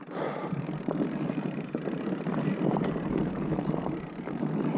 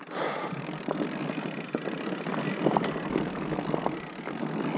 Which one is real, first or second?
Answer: second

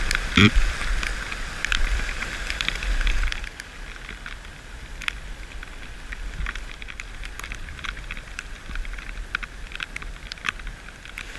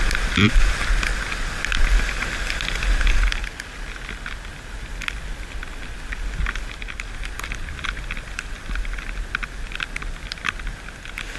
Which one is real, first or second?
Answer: second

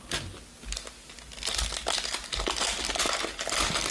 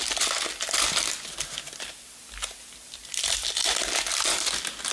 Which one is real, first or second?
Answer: first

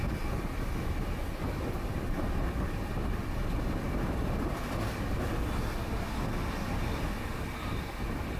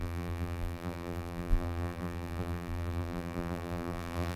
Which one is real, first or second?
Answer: first